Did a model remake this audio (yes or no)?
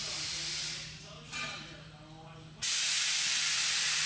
no